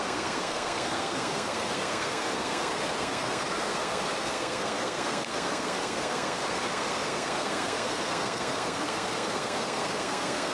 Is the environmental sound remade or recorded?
remade